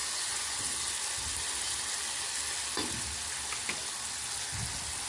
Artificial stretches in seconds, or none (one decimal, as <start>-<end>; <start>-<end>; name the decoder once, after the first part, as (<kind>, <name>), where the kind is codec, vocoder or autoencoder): 0.0-0.6 (vocoder, Vocos)